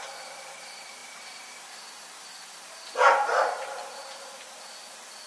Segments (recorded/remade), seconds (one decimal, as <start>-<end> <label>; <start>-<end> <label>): 0.0-5.3 recorded

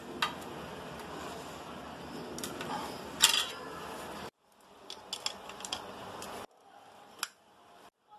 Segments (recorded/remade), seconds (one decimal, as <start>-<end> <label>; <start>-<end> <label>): 0.0-8.2 recorded

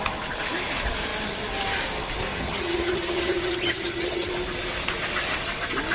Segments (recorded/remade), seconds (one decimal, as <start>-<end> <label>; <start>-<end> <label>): 0.0-2.3 recorded; 2.3-4.3 remade; 4.3-5.9 recorded

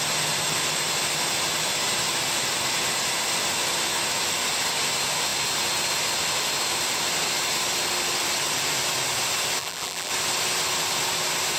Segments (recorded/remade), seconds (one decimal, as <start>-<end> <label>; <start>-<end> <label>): 0.0-9.6 recorded; 9.6-10.1 remade; 10.1-11.6 recorded

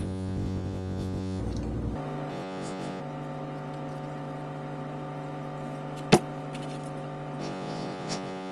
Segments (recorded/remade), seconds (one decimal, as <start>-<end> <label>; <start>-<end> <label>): 0.0-1.4 remade; 1.4-2.3 recorded; 2.3-3.0 remade; 3.0-7.4 recorded; 7.4-8.5 remade

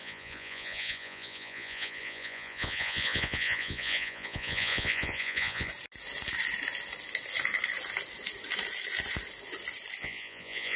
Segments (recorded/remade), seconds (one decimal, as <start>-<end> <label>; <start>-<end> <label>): 0.0-5.7 remade; 5.7-10.0 recorded; 10.0-10.8 remade